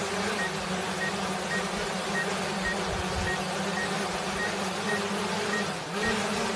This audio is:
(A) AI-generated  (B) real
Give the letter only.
B